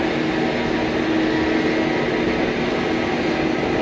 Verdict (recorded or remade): recorded